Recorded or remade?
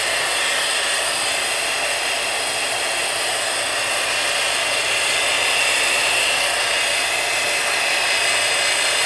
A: recorded